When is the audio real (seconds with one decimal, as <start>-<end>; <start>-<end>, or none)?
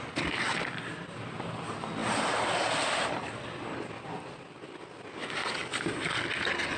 0.0-6.8